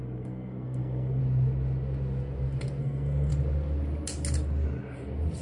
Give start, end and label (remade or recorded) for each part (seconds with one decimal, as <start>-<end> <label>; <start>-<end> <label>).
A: 0.0-1.2 remade; 1.2-2.8 recorded; 2.8-3.3 remade; 3.3-5.4 recorded